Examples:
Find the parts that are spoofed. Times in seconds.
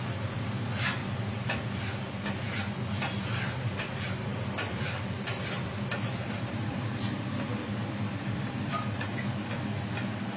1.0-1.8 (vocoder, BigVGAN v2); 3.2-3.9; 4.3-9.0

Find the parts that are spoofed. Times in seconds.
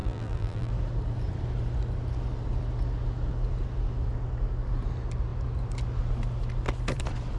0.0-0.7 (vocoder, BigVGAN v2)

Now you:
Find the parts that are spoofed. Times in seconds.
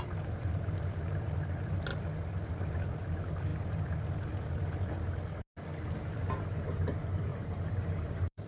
7.3-8.5 (vocoder, BigVGAN v2)